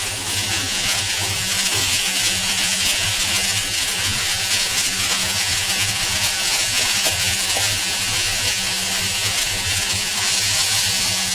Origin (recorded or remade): remade